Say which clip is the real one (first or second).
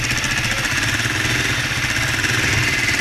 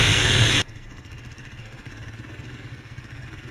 first